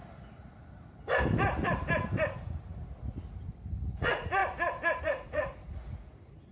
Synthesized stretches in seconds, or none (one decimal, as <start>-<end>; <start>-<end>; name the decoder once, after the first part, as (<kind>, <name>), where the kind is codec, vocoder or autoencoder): 3.9-4.4 (vocoder, Vocos); 5.0-6.5